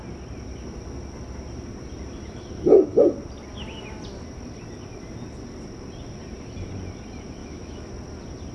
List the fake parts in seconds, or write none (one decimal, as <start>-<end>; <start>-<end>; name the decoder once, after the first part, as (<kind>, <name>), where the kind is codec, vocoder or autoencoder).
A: 7.4-7.9 (autoencoder, DAC-VAE)